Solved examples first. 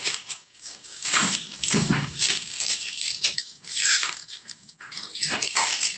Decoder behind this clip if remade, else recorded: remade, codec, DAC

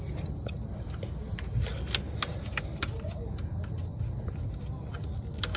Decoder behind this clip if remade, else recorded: recorded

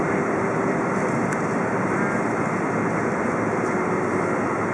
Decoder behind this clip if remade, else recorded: recorded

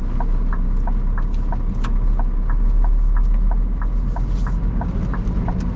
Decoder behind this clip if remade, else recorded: recorded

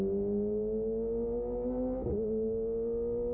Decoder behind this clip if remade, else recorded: recorded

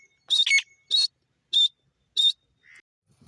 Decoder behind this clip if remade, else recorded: recorded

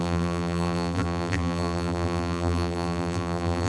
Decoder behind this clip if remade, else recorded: remade, vocoder, BigVGAN v2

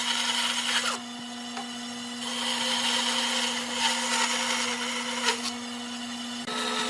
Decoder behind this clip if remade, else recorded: recorded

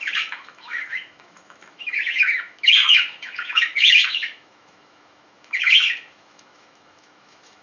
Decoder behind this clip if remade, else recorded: remade, autoencoder, DAC-VAE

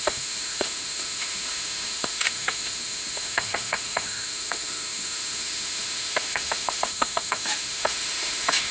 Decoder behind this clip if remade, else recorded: remade, autoencoder, DAC-VAE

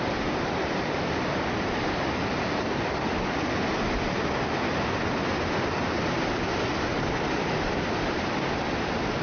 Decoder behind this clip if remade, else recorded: recorded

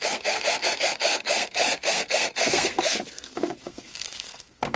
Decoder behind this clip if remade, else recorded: remade, codec, SNAC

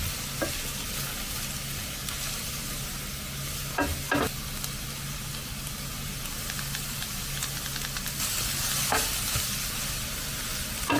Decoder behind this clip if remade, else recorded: recorded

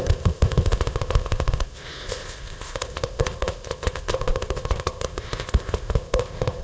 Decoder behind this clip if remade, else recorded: remade, codec, ZipCodec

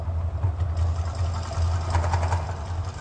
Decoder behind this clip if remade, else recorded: recorded